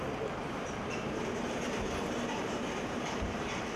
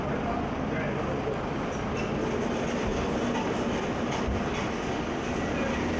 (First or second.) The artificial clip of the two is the first